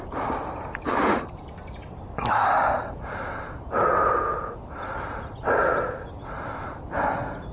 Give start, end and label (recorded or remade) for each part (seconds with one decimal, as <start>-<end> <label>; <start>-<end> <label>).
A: 0.0-7.5 recorded